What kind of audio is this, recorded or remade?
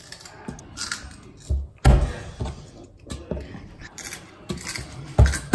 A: recorded